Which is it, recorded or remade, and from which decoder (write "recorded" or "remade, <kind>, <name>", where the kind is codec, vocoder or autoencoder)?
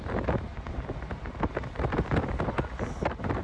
recorded